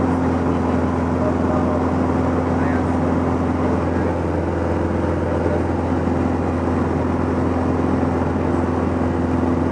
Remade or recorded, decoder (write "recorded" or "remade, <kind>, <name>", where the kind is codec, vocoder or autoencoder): recorded